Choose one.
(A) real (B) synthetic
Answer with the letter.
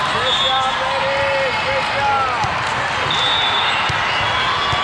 A